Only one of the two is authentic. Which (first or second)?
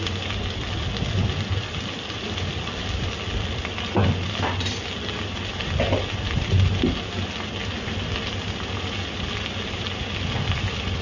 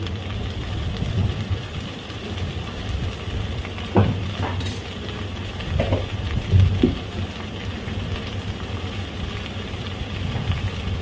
first